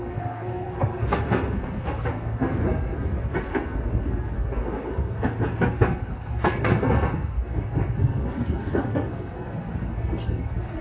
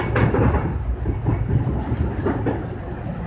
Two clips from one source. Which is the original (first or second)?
second